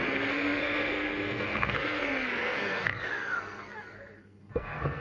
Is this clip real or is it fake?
fake